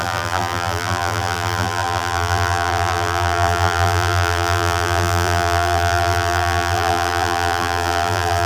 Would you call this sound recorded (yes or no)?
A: no